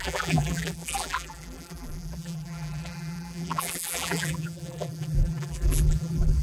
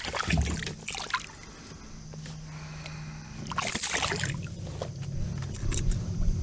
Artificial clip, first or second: first